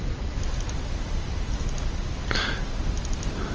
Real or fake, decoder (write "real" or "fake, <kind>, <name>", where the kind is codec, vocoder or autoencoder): real